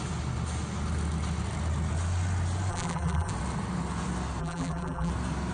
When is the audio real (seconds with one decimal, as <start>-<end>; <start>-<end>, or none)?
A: 0.0-2.7; 3.3-4.4; 5.1-5.5